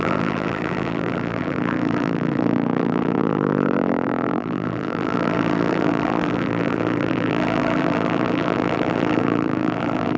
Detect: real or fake fake